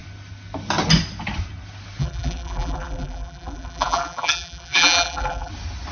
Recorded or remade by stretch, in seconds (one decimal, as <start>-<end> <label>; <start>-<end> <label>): 0.0-2.0 recorded; 2.0-5.5 remade; 5.5-5.9 recorded

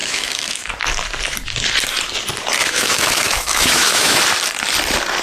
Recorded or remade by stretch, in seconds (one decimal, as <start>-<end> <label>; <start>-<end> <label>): 0.0-0.7 remade; 0.7-2.6 recorded; 2.6-4.2 remade; 4.2-5.2 recorded

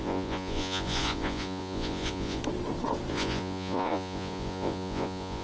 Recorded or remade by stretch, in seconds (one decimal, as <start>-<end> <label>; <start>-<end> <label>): 0.0-2.4 remade; 2.4-3.1 recorded; 3.1-5.4 remade

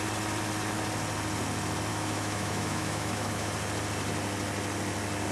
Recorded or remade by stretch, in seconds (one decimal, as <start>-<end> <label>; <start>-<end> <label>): 0.0-1.9 recorded; 1.9-3.5 remade; 3.5-5.3 recorded

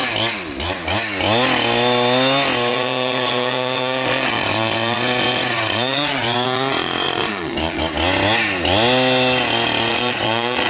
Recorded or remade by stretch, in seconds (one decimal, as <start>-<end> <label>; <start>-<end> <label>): 0.0-2.7 recorded; 2.7-7.8 remade; 7.8-9.9 recorded; 9.9-10.7 remade